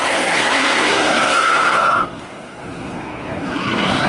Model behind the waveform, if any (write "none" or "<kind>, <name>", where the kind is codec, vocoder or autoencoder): codec, SNAC